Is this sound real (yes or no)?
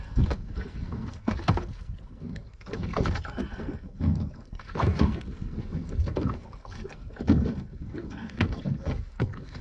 no